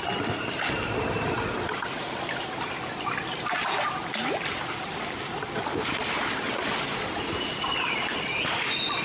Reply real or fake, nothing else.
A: real